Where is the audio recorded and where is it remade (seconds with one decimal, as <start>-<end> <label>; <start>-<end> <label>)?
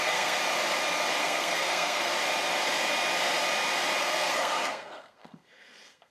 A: 0.0-0.4 remade; 0.4-1.2 recorded; 1.2-2.1 remade; 2.1-4.0 recorded; 4.0-6.1 remade